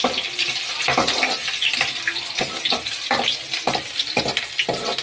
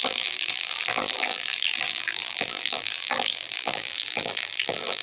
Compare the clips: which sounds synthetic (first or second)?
second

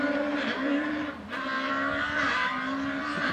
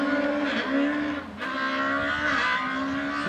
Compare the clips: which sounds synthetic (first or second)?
first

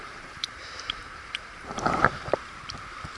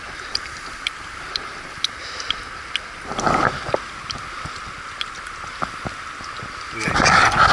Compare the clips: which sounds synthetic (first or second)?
first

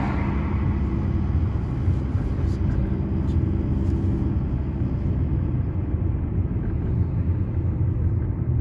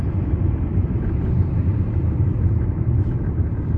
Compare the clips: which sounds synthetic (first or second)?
second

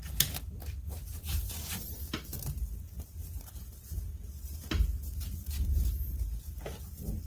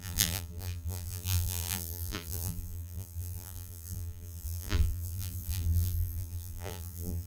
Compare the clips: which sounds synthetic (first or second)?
second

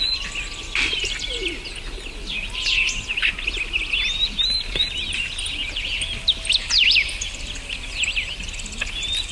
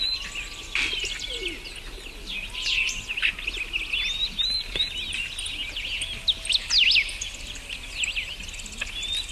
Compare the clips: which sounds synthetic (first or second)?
first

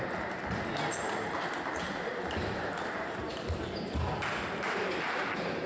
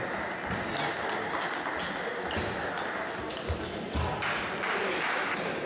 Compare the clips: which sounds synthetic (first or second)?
first